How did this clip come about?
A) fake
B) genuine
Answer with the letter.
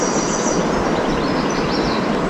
B